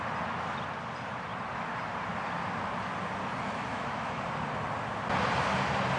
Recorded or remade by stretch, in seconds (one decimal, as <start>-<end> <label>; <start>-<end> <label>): 0.0-3.7 recorded; 3.7-4.2 remade; 4.2-6.0 recorded